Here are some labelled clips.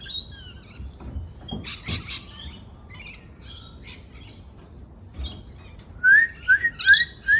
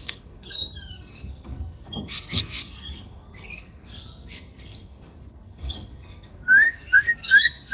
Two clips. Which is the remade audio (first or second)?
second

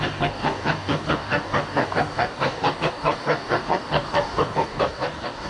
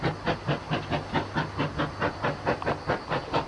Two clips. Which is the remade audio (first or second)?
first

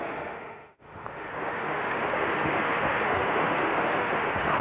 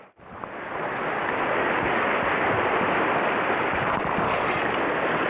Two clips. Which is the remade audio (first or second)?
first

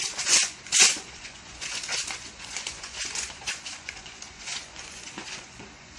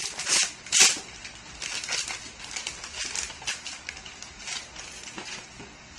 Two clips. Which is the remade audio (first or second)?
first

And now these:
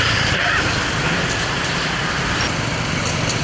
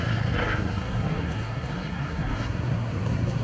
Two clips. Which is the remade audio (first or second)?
second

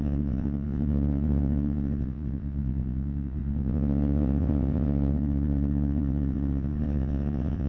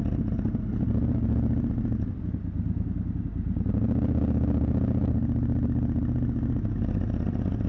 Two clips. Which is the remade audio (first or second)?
first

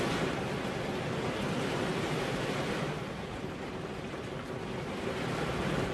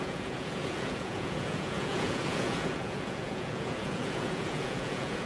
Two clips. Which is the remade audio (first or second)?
second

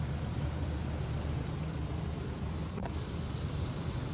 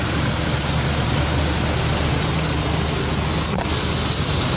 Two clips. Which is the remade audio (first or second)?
first